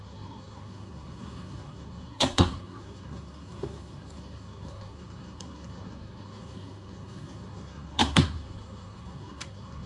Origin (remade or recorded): remade